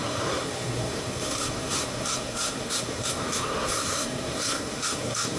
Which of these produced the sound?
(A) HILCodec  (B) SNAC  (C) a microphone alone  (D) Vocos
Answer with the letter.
B